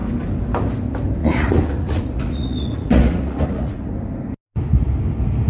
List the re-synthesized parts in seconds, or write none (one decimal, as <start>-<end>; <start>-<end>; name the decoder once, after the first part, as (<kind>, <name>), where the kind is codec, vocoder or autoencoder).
1.2-3.9 (vocoder, Vocos)